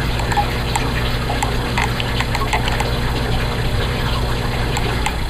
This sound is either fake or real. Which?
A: real